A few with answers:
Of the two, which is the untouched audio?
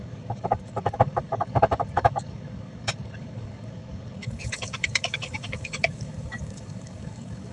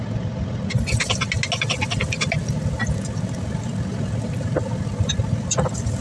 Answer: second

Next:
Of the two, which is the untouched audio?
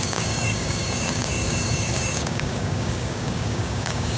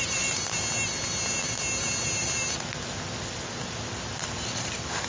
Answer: second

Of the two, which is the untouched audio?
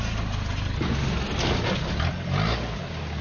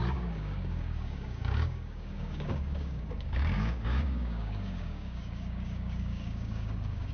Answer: first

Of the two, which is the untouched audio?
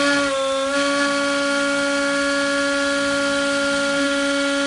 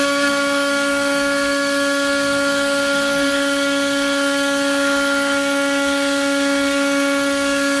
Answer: first